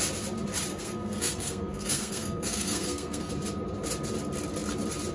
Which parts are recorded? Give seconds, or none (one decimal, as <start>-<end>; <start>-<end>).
0.0-0.7; 3.3-5.1